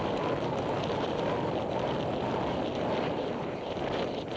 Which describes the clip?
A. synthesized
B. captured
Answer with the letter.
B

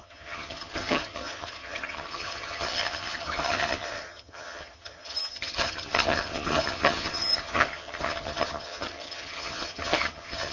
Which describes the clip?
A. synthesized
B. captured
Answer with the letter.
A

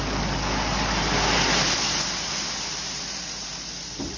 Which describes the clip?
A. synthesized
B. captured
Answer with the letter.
B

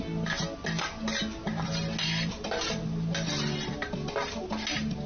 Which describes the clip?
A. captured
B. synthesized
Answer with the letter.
A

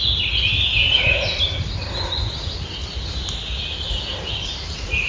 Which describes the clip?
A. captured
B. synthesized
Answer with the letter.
A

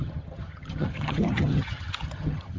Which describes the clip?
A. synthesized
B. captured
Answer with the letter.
A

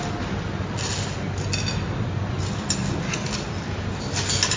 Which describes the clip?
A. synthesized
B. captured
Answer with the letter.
B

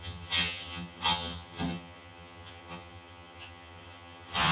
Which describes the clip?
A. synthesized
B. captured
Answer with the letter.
A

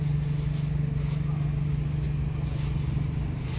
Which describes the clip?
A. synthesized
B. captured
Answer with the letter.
B